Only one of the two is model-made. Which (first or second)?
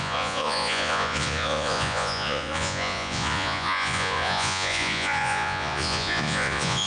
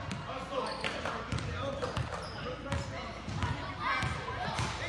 first